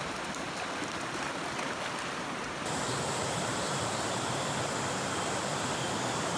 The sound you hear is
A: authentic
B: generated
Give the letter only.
A